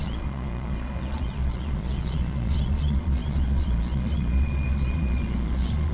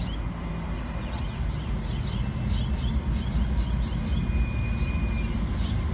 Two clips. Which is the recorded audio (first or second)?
second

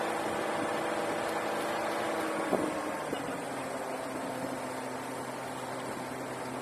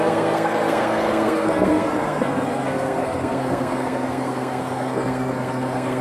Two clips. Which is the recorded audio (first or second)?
first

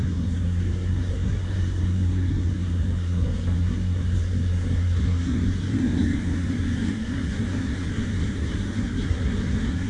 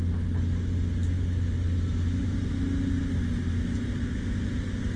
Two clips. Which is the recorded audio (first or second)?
second